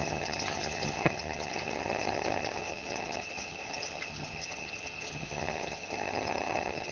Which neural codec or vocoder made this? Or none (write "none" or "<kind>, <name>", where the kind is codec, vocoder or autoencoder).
vocoder, HiFi-GAN